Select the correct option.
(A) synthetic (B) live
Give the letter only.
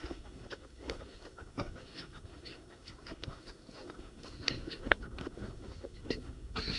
A